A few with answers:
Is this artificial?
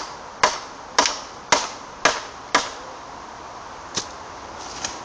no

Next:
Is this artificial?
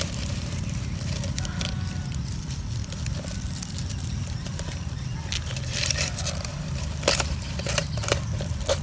yes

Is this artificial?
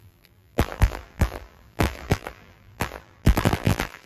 yes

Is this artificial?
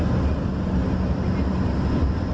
no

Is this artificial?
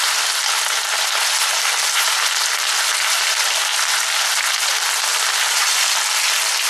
no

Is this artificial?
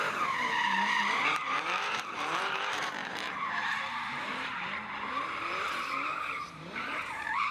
yes